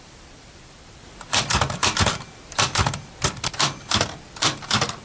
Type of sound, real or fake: fake